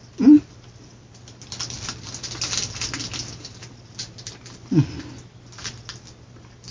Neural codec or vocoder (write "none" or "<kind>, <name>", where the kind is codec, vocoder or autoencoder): none